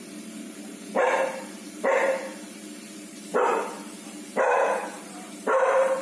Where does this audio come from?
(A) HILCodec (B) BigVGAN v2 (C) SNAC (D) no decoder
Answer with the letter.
B